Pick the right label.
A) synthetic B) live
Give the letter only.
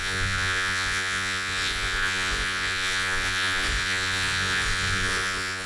A